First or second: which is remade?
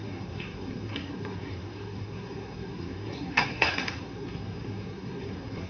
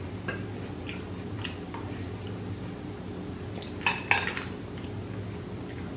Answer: first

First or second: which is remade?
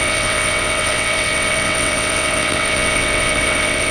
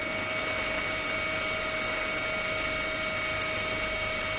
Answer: first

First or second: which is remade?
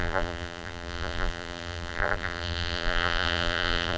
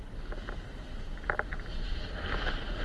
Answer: first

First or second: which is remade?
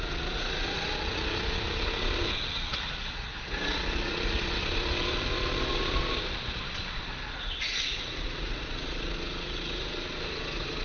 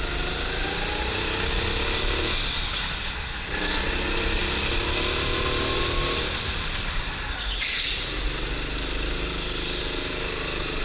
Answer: first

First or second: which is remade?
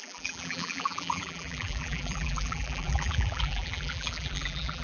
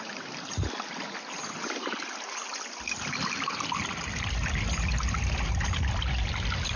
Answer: first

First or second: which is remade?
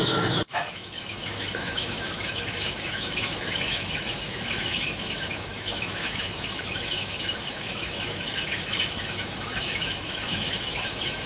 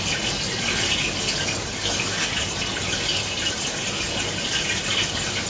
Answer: first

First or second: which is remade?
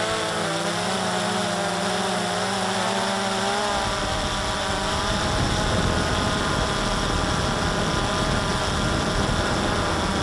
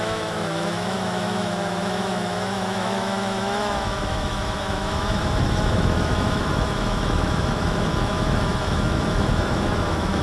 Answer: second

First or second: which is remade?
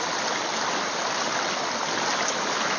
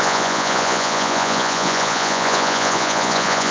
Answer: second